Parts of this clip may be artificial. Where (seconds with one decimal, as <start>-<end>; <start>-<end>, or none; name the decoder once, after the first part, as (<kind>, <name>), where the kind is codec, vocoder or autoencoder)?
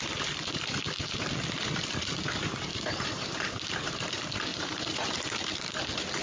2.7-4.0 (vocoder, BigVGAN v2); 4.5-5.6